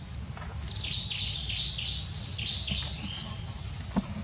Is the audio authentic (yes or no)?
yes